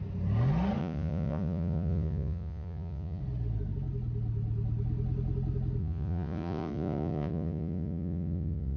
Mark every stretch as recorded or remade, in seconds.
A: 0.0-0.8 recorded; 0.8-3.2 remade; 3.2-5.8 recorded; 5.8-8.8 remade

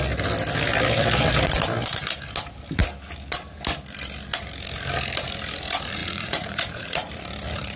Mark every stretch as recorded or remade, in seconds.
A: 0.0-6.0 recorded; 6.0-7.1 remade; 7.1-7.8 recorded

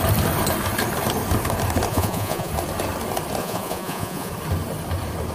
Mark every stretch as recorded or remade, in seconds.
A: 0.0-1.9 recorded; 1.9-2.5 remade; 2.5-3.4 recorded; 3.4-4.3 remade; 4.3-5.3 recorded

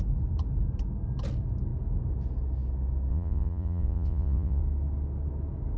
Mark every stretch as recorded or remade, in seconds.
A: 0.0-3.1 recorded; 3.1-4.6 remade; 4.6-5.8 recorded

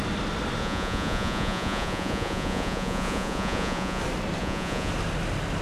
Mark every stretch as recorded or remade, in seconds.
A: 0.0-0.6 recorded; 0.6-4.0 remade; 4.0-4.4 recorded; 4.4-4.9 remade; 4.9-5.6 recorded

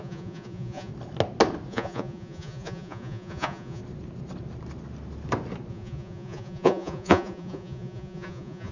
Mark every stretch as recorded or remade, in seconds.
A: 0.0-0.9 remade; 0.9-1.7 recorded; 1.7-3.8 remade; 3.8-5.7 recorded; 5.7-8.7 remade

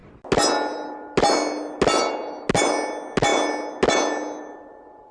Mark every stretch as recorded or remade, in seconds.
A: 0.0-5.1 recorded